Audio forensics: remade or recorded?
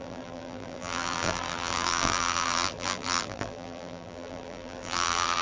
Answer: remade